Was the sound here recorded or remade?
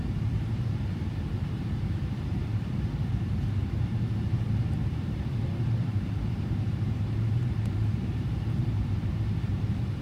remade